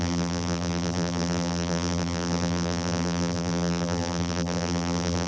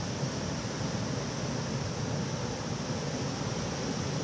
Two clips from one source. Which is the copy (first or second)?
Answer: first